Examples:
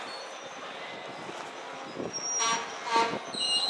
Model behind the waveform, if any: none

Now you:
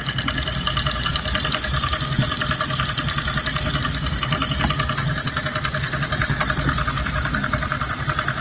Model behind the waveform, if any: none